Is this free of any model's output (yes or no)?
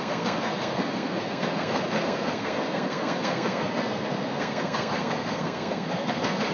no